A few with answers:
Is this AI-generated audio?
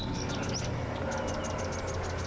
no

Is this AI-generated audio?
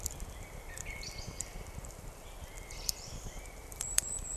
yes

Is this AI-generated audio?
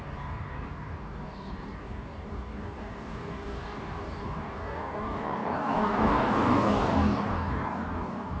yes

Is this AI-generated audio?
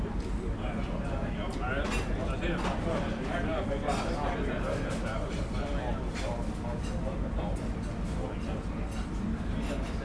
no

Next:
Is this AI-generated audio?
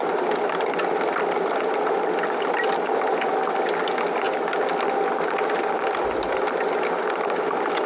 no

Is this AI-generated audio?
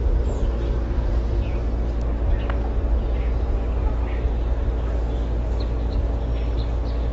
no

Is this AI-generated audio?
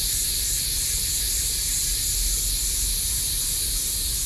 no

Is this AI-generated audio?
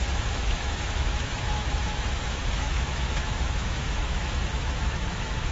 yes